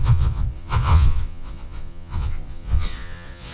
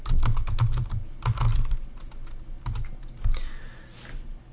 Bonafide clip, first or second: second